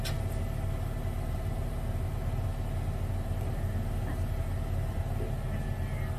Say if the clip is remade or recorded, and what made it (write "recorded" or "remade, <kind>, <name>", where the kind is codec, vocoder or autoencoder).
recorded